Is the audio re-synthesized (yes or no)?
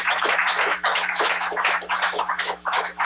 yes